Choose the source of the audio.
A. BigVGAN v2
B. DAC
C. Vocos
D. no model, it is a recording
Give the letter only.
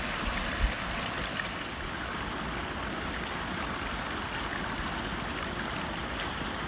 D